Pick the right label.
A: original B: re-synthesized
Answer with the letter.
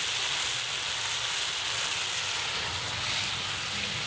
A